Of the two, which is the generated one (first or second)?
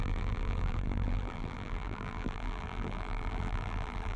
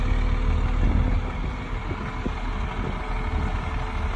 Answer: first